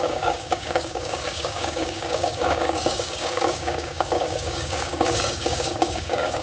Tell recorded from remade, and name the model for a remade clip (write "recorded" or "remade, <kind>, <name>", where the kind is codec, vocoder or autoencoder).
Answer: remade, codec, DAC